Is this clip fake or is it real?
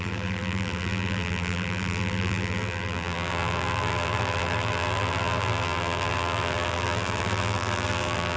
fake